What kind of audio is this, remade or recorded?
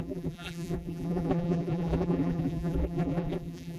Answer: remade